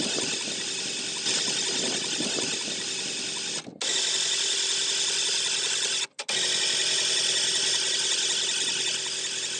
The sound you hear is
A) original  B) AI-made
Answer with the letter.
A